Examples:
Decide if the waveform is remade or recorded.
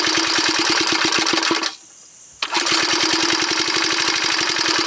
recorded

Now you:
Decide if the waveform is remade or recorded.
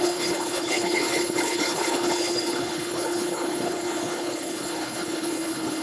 remade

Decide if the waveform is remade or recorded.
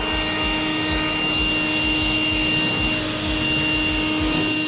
recorded